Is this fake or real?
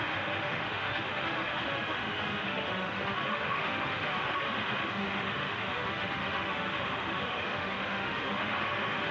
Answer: fake